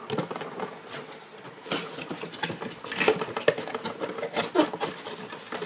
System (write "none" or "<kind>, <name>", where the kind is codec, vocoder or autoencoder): none